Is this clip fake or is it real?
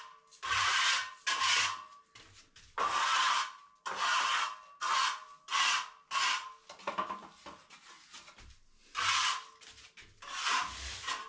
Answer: real